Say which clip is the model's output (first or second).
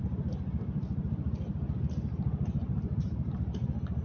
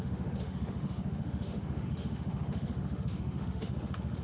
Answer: second